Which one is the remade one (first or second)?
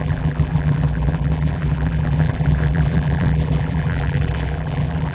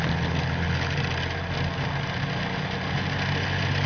first